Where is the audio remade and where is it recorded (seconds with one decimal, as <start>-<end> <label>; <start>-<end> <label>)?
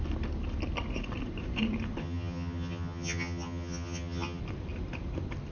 0.0-2.0 recorded; 2.0-4.4 remade; 4.4-5.5 recorded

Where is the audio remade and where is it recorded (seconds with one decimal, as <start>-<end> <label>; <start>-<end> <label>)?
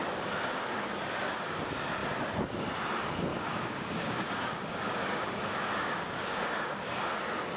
0.0-3.3 recorded; 3.3-6.8 remade; 6.8-7.6 recorded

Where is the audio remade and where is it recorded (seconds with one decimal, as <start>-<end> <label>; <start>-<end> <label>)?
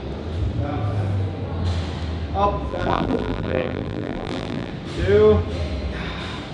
0.0-2.7 recorded; 2.7-4.7 remade; 4.7-6.5 recorded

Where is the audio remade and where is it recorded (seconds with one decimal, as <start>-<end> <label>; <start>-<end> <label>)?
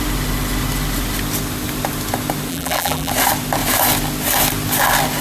0.0-2.5 recorded; 2.5-3.1 remade; 3.1-5.2 recorded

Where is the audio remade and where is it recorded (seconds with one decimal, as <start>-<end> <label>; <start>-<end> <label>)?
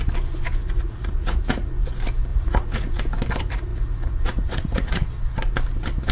0.0-0.6 recorded; 0.6-1.7 remade; 1.7-2.3 recorded; 2.3-3.0 remade; 3.0-3.7 recorded; 3.7-5.1 remade; 5.1-6.1 recorded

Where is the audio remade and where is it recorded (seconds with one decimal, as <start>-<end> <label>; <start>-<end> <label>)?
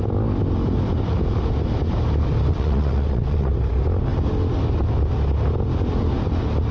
0.0-2.5 recorded; 2.5-3.5 remade; 3.5-6.7 recorded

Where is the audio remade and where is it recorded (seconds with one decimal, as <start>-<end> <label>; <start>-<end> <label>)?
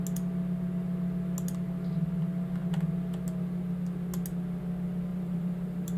0.0-5.1 recorded; 5.1-6.0 remade